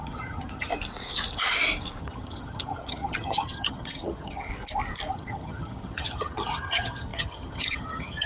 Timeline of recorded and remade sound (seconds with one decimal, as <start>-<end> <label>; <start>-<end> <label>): 0.0-0.7 remade; 0.7-2.0 recorded; 2.0-4.5 remade; 4.5-5.1 recorded; 5.1-8.3 remade